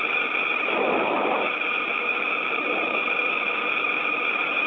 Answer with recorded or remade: recorded